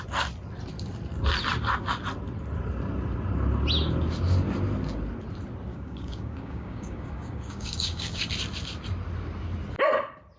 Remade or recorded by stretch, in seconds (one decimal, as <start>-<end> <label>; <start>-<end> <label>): 0.0-5.7 recorded; 5.7-8.3 remade; 8.3-10.4 recorded